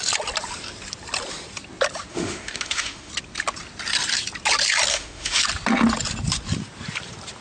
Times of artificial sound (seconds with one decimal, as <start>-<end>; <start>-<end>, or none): 2.1-3.1; 4.9-5.4